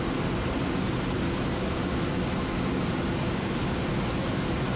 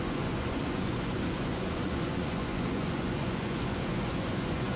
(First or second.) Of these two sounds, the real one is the first